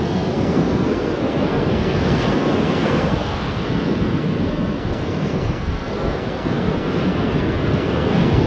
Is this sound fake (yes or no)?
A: yes